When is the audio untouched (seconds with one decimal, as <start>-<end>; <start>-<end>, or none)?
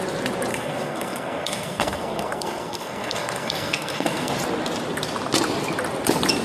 0.0-0.5; 4.3-6.4